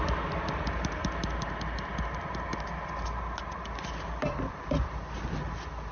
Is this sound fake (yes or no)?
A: no